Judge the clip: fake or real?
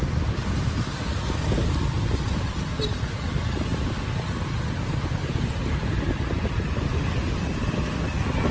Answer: fake